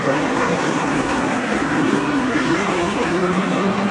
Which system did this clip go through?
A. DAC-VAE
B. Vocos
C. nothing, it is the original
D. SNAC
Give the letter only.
D